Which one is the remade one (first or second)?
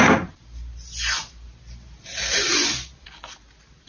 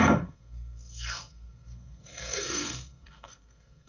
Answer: second